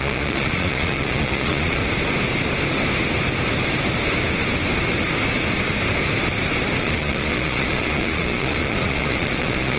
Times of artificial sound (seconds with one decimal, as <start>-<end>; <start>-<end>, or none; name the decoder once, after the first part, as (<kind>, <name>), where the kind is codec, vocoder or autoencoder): 0.0-1.8 (vocoder, Vocos); 6.8-9.8